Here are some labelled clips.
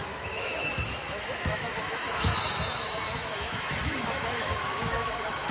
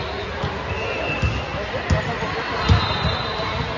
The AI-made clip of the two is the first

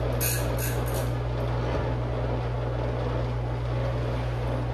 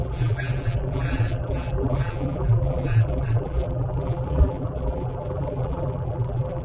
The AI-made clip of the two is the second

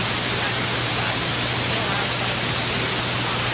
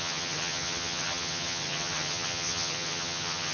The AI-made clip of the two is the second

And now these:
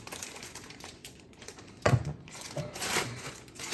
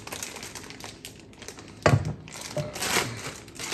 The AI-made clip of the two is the first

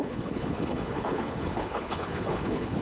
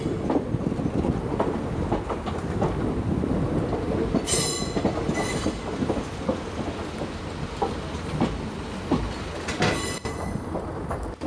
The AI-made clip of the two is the first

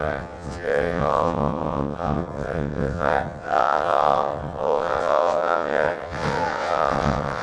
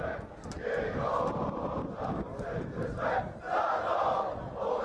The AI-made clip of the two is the first